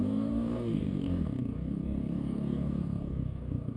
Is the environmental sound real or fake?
fake